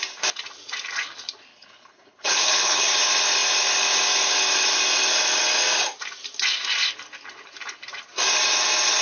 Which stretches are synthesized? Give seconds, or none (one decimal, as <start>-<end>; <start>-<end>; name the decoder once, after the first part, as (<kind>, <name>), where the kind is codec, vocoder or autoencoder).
1.5-2.9 (codec, HILCodec)